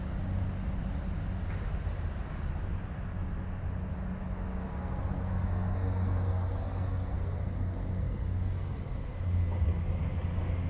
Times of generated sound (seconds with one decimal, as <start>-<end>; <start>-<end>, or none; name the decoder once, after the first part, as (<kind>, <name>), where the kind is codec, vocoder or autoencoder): 4.7-8.8 (codec, SNAC)